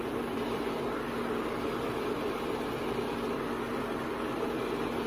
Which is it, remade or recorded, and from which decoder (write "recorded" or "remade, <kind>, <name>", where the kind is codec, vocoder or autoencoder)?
recorded